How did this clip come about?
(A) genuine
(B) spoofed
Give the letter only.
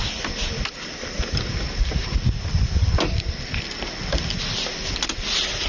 A